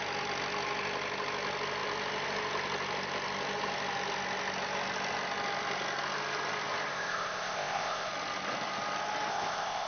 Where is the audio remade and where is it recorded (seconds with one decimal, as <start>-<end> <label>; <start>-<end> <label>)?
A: 0.0-6.9 recorded; 6.9-8.1 remade; 8.1-9.3 recorded; 9.3-9.9 remade